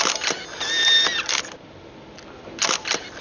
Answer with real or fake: real